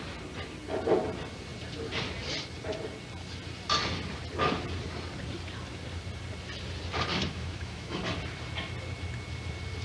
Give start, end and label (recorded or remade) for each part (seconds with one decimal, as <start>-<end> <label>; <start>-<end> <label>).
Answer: 0.0-7.1 recorded; 7.1-8.0 remade; 8.0-9.8 recorded